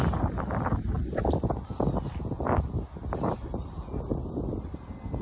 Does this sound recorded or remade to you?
recorded